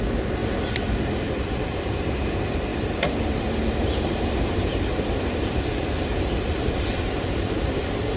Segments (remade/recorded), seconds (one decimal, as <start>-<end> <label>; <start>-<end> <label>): 0.0-2.7 remade; 2.7-5.2 recorded; 5.2-8.2 remade